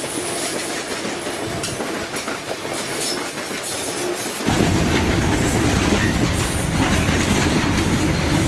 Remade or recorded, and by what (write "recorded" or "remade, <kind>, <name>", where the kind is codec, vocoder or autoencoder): recorded